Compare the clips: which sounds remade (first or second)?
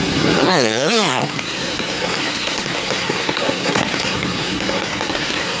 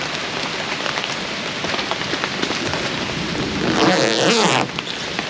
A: first